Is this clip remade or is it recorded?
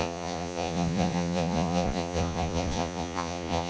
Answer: remade